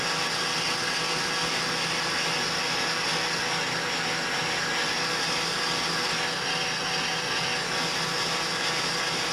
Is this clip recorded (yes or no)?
yes